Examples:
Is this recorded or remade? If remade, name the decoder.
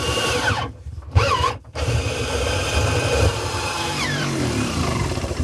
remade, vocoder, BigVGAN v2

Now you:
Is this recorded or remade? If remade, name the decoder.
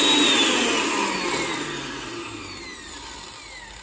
recorded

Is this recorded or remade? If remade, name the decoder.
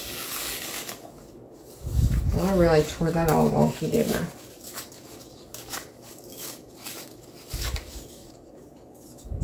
remade, codec, DAC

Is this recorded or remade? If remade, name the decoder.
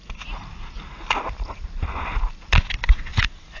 recorded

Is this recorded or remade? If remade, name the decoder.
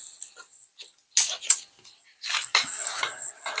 recorded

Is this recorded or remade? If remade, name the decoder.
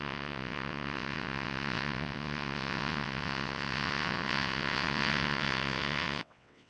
remade, vocoder, WaveNeXt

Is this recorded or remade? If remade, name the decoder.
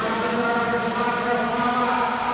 recorded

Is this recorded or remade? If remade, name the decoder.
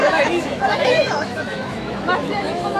remade, autoencoder, DAC-VAE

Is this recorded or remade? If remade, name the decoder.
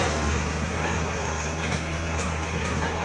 remade, codec, SNAC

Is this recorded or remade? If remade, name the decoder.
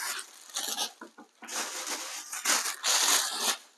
recorded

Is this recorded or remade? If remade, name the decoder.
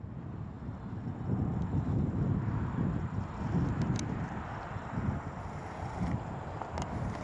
recorded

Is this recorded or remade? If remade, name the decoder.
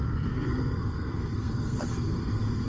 remade, codec, SNAC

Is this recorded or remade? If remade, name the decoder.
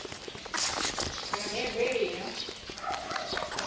recorded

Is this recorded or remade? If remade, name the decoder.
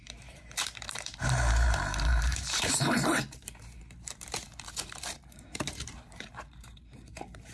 remade, vocoder, BigVGAN v2